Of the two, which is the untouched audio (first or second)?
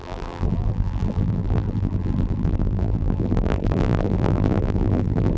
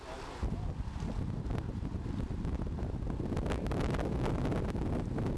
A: second